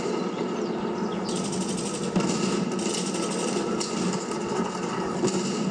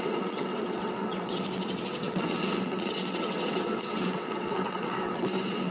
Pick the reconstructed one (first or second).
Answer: second